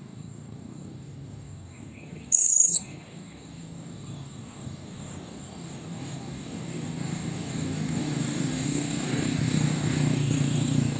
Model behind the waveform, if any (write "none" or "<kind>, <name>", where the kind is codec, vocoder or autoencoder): codec, DAC